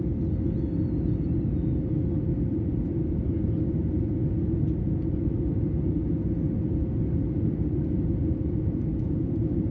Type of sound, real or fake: real